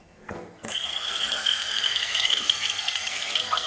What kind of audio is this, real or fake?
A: fake